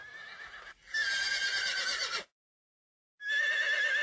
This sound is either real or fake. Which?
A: real